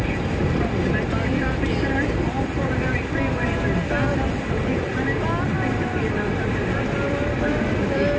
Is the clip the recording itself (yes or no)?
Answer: yes